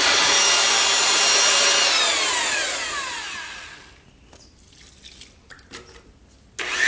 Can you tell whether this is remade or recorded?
recorded